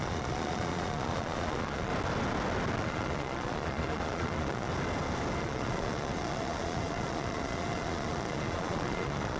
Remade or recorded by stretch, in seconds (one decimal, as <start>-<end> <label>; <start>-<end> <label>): 0.0-1.9 remade; 1.9-2.8 recorded; 2.8-4.7 remade; 4.7-5.4 recorded; 5.4-9.4 remade